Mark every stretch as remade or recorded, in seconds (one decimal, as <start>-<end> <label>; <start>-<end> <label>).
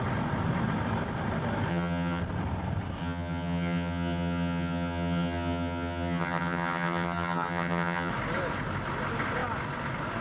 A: 0.0-1.7 recorded; 1.7-2.2 remade; 2.2-3.0 recorded; 3.0-8.1 remade; 8.1-10.2 recorded